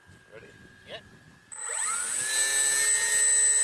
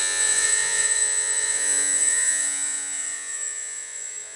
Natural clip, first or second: first